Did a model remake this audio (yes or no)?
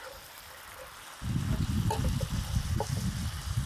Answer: no